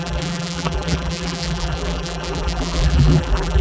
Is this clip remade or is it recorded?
remade